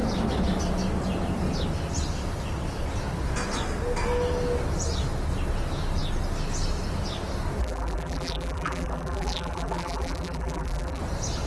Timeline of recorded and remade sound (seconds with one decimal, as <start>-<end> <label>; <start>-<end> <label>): 0.0-7.6 recorded; 7.6-11.0 remade; 11.0-11.5 recorded